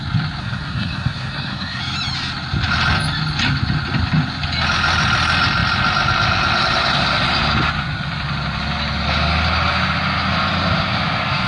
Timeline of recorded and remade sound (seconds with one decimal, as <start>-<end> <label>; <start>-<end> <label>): 0.0-0.4 recorded; 0.4-1.8 remade; 1.8-11.5 recorded

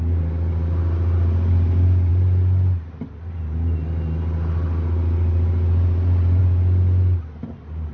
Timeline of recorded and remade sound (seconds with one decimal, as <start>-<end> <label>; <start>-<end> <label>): 0.0-7.9 recorded

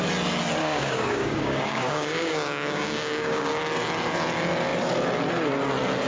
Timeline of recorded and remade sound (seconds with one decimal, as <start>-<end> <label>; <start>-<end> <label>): 0.0-0.6 recorded; 0.6-3.6 remade; 3.6-6.1 recorded

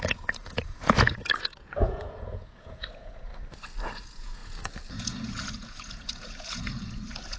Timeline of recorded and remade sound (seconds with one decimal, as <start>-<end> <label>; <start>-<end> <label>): 0.0-3.3 remade; 3.3-4.0 recorded; 4.0-7.4 remade